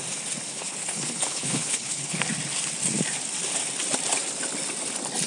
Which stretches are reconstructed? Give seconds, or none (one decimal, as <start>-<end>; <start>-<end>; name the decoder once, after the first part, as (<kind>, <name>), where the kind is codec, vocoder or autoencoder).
0.5-2.2 (codec, HILCodec)